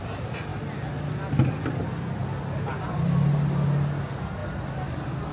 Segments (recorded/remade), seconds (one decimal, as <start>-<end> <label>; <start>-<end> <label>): 0.0-2.2 recorded; 2.2-3.3 remade; 3.3-4.4 recorded; 4.4-5.3 remade